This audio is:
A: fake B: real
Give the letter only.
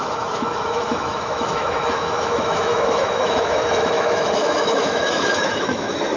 A